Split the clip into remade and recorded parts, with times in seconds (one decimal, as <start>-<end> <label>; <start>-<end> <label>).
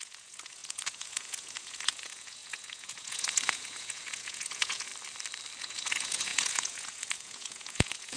0.0-4.9 remade; 4.9-5.6 recorded; 5.6-8.2 remade